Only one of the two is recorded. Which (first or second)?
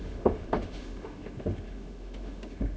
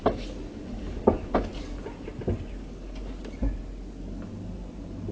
second